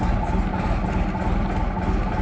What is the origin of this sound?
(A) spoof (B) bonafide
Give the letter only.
B